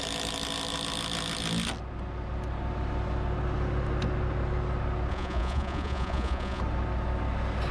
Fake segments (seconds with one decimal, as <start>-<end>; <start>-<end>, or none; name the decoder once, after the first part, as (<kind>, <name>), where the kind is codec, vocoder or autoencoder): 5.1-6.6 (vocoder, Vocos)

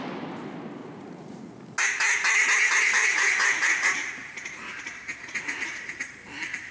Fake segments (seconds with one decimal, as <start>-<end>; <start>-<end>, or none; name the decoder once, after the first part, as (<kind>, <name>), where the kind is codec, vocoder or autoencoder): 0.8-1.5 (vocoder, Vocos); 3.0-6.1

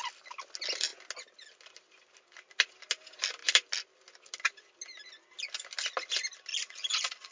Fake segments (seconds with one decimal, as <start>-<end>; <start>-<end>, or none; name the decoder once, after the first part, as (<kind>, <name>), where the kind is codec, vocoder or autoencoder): 6.5-7.3 (vocoder, Vocos)

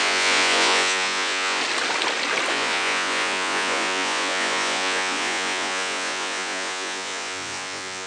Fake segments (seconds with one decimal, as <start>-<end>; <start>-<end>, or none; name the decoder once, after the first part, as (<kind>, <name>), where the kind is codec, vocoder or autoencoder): 0.0-1.6 (vocoder, Vocos); 2.5-8.1